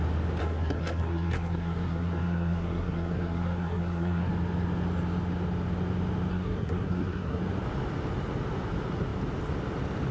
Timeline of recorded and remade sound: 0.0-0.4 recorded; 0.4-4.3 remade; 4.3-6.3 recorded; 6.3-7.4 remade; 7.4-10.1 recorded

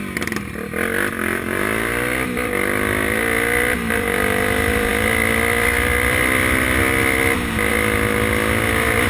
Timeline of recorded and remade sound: 0.0-9.1 recorded

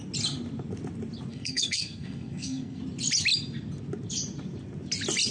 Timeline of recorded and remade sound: 0.0-1.3 recorded; 1.3-2.8 remade; 2.8-5.3 recorded